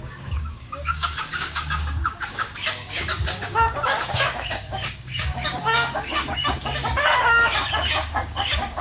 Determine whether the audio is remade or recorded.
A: remade